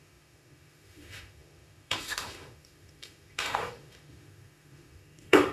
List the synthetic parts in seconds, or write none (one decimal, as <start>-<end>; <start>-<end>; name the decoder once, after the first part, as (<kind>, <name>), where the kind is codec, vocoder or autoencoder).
0.0-5.5 (autoencoder, DAC-VAE)